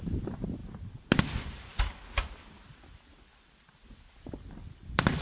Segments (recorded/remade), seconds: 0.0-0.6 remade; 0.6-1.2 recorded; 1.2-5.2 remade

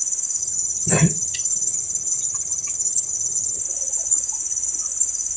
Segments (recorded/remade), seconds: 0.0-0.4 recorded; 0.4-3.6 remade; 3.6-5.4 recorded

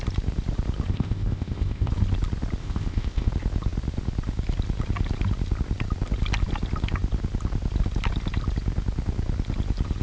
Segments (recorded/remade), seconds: 0.0-0.9 recorded; 0.9-1.9 remade; 1.9-2.6 recorded; 2.6-3.3 remade; 3.3-10.0 recorded

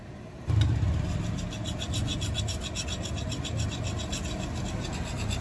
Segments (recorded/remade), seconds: 0.0-5.4 recorded

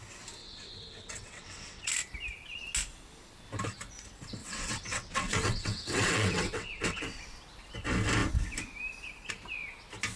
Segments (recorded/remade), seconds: 0.0-0.4 recorded; 0.4-1.9 remade; 1.9-4.4 recorded; 4.4-7.0 remade; 7.0-10.2 recorded

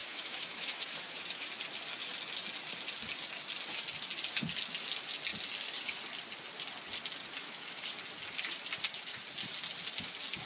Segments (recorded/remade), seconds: 0.0-1.5 remade; 1.5-7.4 recorded; 7.4-7.9 remade; 7.9-10.5 recorded

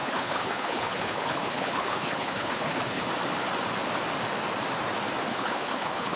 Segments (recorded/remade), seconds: 0.0-3.1 remade; 3.1-5.3 recorded; 5.3-6.2 remade

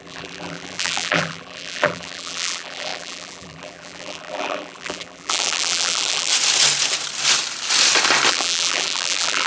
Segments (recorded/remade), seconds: 0.0-6.3 remade; 6.3-8.3 recorded; 8.3-9.5 remade